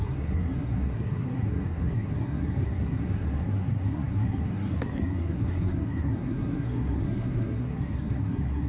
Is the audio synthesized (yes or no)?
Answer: yes